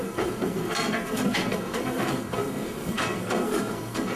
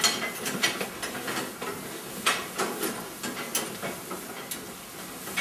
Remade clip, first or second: first